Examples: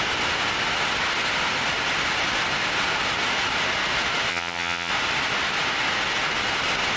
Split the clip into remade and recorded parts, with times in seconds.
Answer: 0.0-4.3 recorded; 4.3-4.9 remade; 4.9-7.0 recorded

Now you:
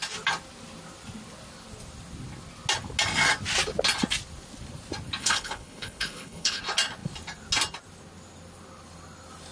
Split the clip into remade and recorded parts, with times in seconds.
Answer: 0.0-5.2 recorded; 5.2-6.6 remade; 6.6-9.5 recorded

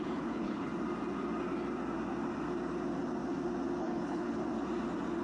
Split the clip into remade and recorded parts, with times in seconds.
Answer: 0.0-0.7 remade; 0.7-3.8 recorded; 3.8-4.4 remade; 4.4-5.2 recorded

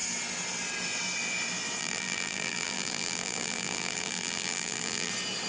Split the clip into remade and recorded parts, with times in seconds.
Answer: 0.0-1.8 recorded; 1.8-5.1 remade; 5.1-5.5 recorded

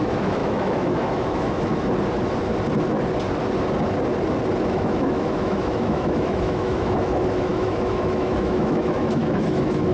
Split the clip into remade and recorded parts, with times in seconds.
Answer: 0.0-1.7 remade; 1.7-4.6 recorded; 4.6-9.9 remade

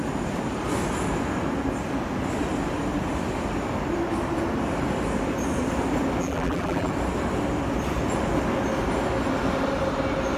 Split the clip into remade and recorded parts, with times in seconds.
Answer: 0.0-6.2 recorded; 6.2-6.9 remade; 6.9-10.4 recorded

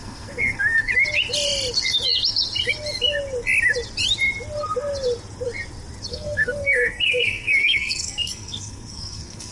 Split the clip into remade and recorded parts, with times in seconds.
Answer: 0.0-0.9 remade; 0.9-6.1 recorded; 6.1-9.5 remade